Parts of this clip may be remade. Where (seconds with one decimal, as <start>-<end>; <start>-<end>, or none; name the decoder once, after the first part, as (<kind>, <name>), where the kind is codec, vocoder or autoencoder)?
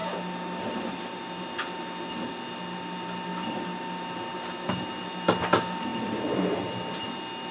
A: none